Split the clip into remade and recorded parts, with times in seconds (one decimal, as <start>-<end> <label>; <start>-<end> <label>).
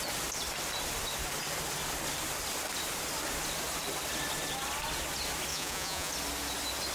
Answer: 0.0-5.5 recorded; 5.5-6.1 remade; 6.1-6.9 recorded